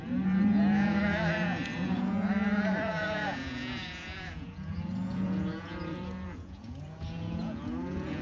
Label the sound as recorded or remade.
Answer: remade